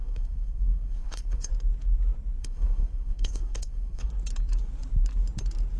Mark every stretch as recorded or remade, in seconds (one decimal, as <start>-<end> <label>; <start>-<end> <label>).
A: 0.0-1.5 remade; 1.5-2.4 recorded; 2.4-4.1 remade; 4.1-5.8 recorded